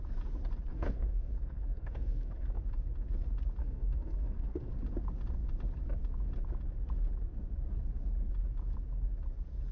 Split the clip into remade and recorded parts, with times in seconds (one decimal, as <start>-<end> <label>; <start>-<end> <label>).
0.0-0.7 recorded; 0.7-2.6 remade; 2.6-3.6 recorded; 3.6-4.7 remade; 4.7-9.7 recorded